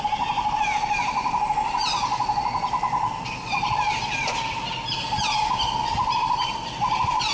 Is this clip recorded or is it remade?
recorded